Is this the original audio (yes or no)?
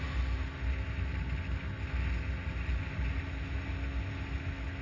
yes